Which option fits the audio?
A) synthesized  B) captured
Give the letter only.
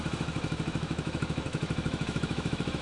A